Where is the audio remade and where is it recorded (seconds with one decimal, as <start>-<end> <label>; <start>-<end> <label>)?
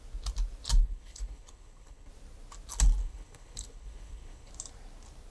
0.0-0.8 recorded; 0.8-2.1 remade; 2.1-3.0 recorded; 3.0-4.5 remade; 4.5-5.3 recorded